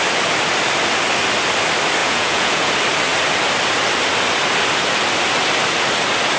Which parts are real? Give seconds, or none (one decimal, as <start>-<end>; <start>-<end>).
0.0-2.0; 2.7-6.4